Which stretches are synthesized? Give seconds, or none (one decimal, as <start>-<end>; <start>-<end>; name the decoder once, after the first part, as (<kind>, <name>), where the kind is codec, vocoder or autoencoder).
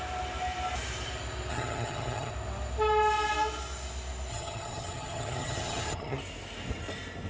1.5-2.3 (vocoder, HiFi-GAN); 4.3-6.2